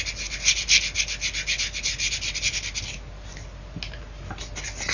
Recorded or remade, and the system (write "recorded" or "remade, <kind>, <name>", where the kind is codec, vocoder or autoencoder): recorded